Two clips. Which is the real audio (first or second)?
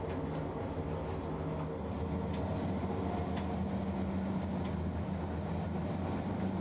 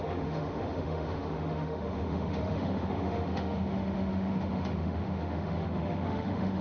first